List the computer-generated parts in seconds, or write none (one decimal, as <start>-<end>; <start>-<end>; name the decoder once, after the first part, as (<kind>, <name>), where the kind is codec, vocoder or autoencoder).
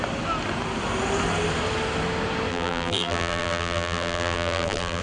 2.5-5.0 (vocoder, BigVGAN v2)